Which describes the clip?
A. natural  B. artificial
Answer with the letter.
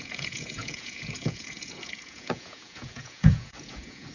B